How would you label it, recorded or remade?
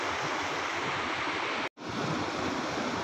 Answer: recorded